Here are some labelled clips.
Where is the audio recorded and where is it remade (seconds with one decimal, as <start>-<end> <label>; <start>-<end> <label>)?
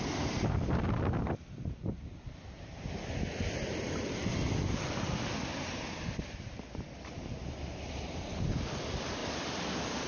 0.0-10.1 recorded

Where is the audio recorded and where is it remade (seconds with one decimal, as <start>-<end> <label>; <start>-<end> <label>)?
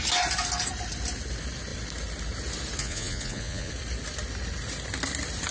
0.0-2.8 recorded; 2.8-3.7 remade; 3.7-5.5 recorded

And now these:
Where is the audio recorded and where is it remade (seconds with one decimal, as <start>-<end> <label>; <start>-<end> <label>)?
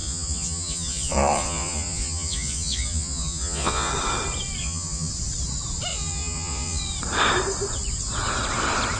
0.0-3.9 remade; 3.9-4.6 recorded; 4.6-5.1 remade; 5.1-5.9 recorded; 5.9-6.8 remade; 6.8-9.0 recorded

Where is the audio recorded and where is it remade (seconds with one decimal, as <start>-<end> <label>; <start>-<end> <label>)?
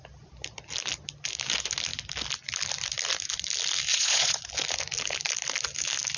0.0-3.9 recorded; 3.9-4.5 remade; 4.5-6.2 recorded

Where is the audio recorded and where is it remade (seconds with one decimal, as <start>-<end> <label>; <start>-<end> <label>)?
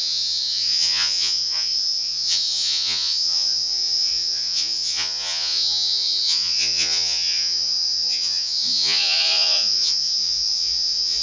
0.0-11.2 remade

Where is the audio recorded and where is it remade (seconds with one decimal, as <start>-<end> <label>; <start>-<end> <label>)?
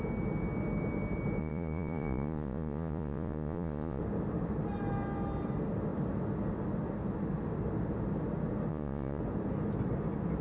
0.0-1.4 recorded; 1.4-4.0 remade; 4.0-8.7 recorded; 8.7-9.2 remade; 9.2-10.4 recorded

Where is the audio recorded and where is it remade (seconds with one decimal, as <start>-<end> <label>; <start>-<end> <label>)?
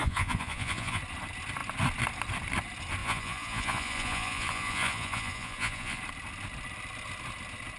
0.0-1.0 remade; 1.0-3.0 recorded; 3.0-6.0 remade; 6.0-7.8 recorded